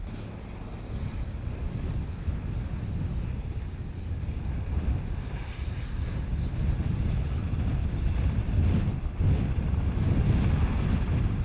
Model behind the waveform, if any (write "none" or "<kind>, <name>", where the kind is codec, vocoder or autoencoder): none